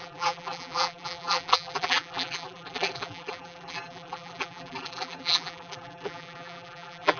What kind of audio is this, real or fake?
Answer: fake